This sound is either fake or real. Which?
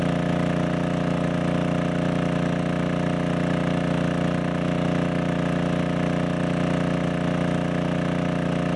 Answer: real